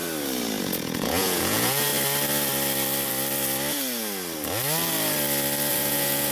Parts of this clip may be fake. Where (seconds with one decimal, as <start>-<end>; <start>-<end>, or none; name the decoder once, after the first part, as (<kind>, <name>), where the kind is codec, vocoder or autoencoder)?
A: 0.6-1.9 (vocoder, Vocos); 5.7-6.3